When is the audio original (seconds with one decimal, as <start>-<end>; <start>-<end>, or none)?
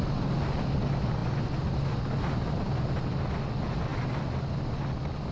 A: 0.0-5.3